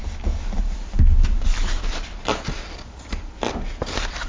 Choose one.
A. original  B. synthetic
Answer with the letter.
B